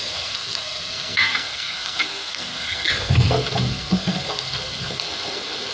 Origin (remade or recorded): remade